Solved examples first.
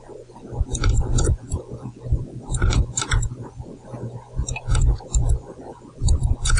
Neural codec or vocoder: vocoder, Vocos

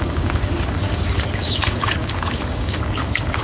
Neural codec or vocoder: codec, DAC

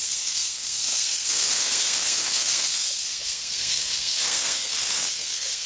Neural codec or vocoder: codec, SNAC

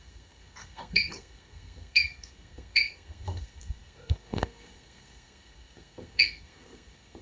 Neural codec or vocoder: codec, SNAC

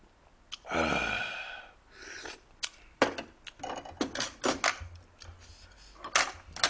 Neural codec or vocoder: none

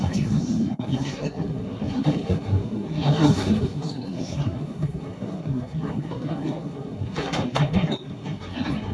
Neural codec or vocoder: codec, SNAC